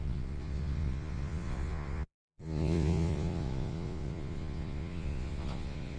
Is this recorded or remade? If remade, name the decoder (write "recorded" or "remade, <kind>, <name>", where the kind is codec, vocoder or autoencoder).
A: remade, vocoder, Vocos